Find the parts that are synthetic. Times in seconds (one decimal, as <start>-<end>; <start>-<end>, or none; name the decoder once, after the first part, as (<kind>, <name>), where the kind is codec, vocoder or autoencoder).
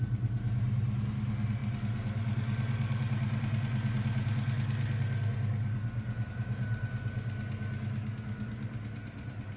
none